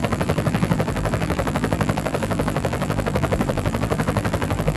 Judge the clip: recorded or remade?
remade